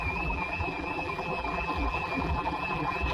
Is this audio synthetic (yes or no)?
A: yes